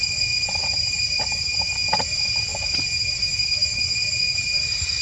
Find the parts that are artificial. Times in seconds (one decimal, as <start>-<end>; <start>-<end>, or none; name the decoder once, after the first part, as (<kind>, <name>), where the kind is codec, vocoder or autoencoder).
none